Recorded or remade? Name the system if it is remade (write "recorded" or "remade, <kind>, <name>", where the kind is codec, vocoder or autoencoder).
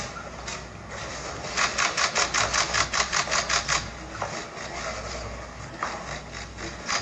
recorded